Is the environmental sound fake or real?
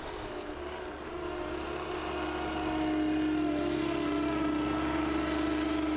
real